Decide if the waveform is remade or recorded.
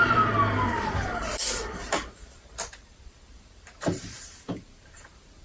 remade